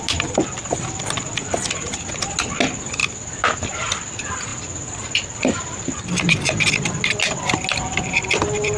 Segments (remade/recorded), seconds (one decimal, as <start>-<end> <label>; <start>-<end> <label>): 0.0-8.8 recorded